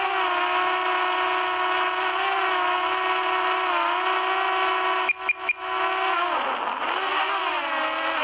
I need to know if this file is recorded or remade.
recorded